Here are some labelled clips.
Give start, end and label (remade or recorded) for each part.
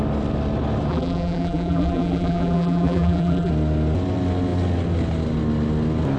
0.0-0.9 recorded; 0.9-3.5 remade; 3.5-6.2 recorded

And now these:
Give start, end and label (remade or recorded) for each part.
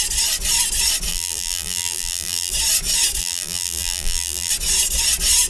0.0-1.1 recorded; 1.1-2.5 remade; 2.5-3.2 recorded; 3.2-4.5 remade; 4.5-5.5 recorded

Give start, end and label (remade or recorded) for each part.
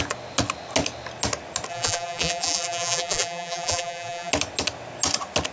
0.0-1.7 recorded; 1.7-4.3 remade; 4.3-5.5 recorded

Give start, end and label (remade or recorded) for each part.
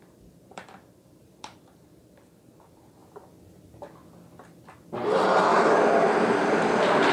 0.0-3.0 remade; 3.0-5.1 recorded; 5.1-5.5 remade; 5.5-6.4 recorded; 6.4-7.1 remade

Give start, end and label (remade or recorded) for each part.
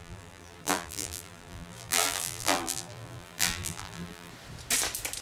0.0-4.3 remade; 4.3-5.2 recorded